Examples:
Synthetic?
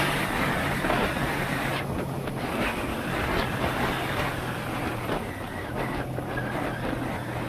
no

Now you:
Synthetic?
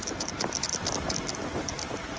no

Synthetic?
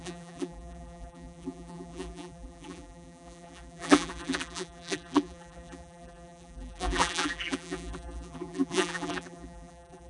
yes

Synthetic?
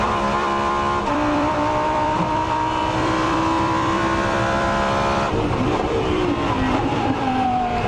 yes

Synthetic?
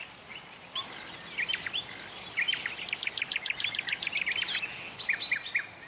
no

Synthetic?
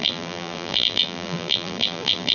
yes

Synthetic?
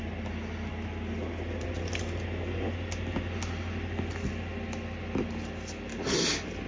no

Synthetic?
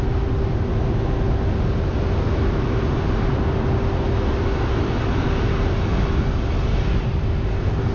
no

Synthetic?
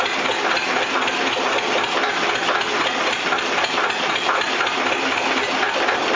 no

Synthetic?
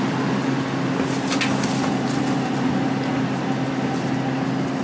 no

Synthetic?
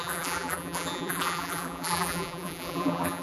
yes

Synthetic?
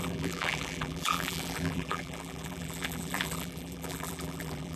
yes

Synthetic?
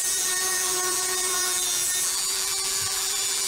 yes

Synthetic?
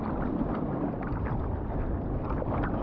yes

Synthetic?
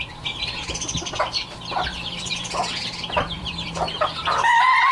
yes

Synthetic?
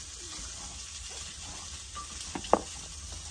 no